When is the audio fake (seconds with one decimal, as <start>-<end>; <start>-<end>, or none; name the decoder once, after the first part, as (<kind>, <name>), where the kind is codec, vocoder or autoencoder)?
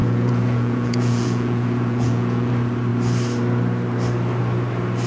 0.0-2.5 (vocoder, Vocos)